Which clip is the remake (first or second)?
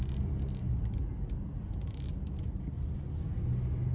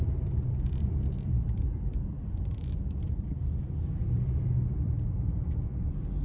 second